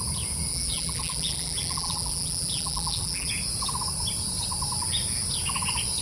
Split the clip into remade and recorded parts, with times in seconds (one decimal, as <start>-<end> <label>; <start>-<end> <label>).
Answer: 0.0-0.5 recorded; 0.5-3.3 remade; 3.3-6.0 recorded